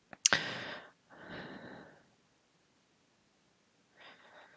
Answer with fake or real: real